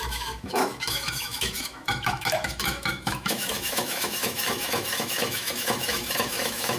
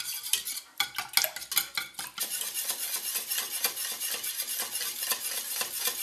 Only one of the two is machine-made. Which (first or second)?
first